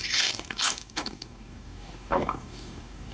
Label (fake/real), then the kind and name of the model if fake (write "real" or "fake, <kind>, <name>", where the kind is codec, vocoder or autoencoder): fake, codec, DAC